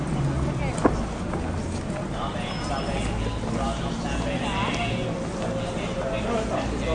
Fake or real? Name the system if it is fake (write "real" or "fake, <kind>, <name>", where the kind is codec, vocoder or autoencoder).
real